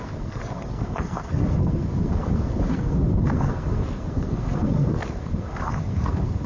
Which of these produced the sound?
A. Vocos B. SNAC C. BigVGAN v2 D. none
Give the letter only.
B